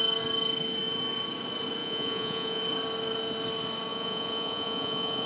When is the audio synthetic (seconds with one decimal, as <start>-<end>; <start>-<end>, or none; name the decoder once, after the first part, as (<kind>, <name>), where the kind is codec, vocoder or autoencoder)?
1.8-2.6 (vocoder, Vocos); 3.9-5.3